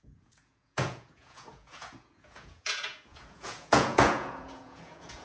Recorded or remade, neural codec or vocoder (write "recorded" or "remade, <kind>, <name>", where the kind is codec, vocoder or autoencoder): remade, vocoder, Vocos